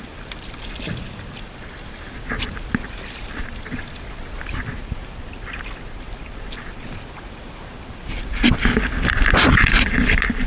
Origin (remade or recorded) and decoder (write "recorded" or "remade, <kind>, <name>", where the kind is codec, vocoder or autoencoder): recorded